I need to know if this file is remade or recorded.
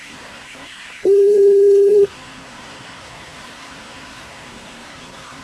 remade